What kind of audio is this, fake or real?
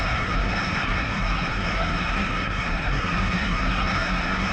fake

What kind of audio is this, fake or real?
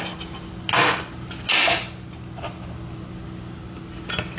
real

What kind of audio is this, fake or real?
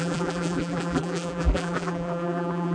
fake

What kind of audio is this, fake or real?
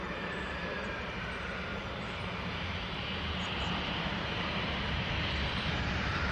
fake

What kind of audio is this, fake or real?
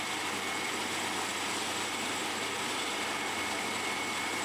fake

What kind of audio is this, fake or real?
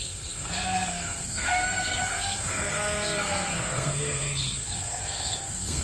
fake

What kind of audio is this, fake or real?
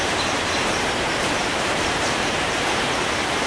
fake